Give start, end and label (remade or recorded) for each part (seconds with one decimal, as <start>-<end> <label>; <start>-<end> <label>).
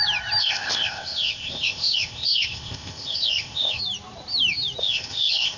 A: 0.0-0.4 recorded; 0.4-3.8 remade; 3.8-4.8 recorded; 4.8-5.6 remade